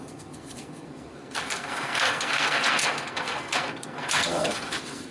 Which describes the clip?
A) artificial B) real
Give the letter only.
A